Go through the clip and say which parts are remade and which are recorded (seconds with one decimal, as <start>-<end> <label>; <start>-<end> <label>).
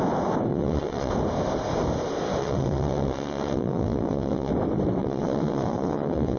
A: 0.0-0.5 recorded; 0.5-1.1 remade; 1.1-2.4 recorded; 2.4-4.5 remade; 4.5-5.0 recorded; 5.0-6.4 remade